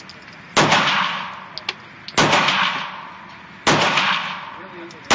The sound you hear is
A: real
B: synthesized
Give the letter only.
A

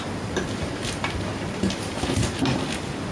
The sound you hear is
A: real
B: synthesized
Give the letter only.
A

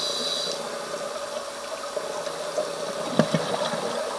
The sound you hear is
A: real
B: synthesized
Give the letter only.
A